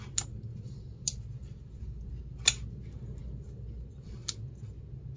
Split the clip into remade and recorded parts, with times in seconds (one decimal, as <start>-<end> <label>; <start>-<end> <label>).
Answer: 0.0-5.2 recorded